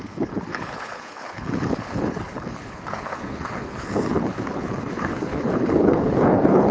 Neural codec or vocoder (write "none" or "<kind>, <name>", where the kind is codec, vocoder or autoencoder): codec, HILCodec